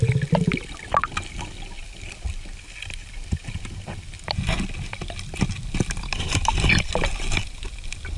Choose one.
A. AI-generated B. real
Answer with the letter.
B